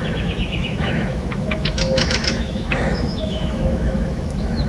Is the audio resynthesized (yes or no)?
yes